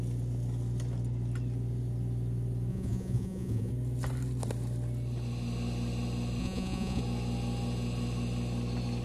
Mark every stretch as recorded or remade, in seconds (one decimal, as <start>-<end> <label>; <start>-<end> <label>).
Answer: 0.0-2.7 recorded; 2.7-3.7 remade; 3.7-6.4 recorded; 6.4-7.0 remade; 7.0-9.0 recorded